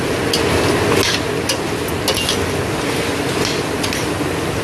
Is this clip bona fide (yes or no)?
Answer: yes